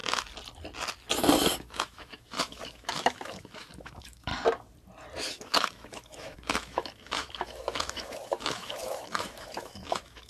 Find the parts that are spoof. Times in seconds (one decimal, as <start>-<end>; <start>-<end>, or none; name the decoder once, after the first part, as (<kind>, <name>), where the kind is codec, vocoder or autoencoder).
1.5-4.3 (autoencoder, DAC-VAE); 5.3-10.3